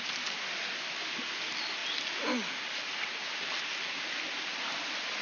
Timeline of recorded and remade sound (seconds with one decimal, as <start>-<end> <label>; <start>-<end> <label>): 0.0-5.2 recorded